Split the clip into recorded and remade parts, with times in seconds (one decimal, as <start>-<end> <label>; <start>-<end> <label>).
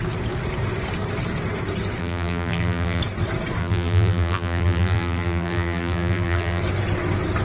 0.0-2.0 recorded; 2.0-3.0 remade; 3.0-3.6 recorded; 3.6-6.6 remade; 6.6-7.4 recorded